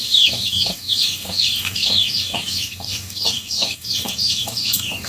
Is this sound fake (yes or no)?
yes